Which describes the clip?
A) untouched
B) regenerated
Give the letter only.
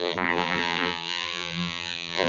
B